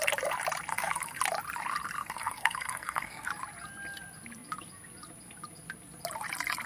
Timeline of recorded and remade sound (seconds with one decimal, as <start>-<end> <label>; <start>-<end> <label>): 0.0-0.7 recorded; 0.7-1.2 remade; 1.2-2.0 recorded; 2.0-3.3 remade; 3.3-6.7 recorded

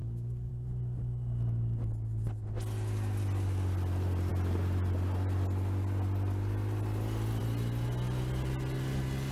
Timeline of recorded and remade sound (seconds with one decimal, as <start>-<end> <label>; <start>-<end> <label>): 0.0-0.5 remade; 0.5-9.3 recorded

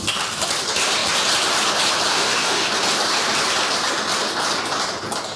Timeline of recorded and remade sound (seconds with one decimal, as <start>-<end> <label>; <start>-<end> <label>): 0.0-2.1 recorded; 2.1-2.7 remade; 2.7-5.4 recorded

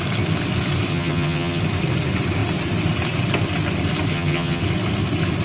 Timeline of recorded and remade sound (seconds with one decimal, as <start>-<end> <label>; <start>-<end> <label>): 0.0-0.9 recorded; 0.9-1.6 remade; 1.6-4.1 recorded; 4.1-4.6 remade; 4.6-5.4 recorded

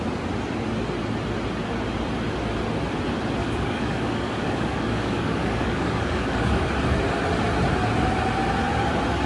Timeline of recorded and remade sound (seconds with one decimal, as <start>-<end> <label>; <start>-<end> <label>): 0.0-3.4 recorded; 3.4-6.7 remade; 6.7-9.3 recorded

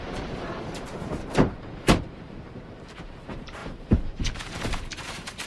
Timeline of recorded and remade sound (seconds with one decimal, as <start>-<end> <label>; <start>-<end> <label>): 0.0-5.5 remade

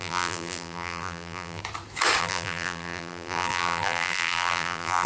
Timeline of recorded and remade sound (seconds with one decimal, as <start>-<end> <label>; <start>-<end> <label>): 0.0-1.6 remade; 1.6-2.2 recorded; 2.2-5.1 remade

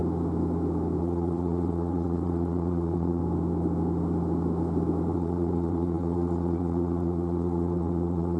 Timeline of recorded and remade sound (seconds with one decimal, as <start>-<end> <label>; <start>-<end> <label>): 0.0-1.0 recorded; 1.0-3.2 remade; 3.2-5.1 recorded; 5.1-8.4 remade